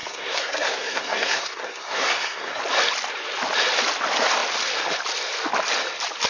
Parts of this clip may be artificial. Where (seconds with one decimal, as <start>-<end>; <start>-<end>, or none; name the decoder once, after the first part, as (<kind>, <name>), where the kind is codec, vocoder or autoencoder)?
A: 0.0-2.6 (codec, SNAC)